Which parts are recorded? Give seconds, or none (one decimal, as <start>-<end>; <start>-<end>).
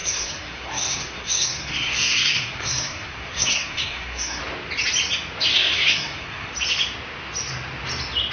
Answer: 4.4-5.5; 6.5-8.3